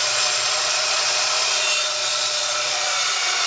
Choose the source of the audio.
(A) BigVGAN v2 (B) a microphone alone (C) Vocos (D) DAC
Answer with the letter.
C